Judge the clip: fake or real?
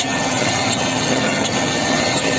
fake